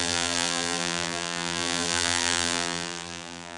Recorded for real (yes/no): no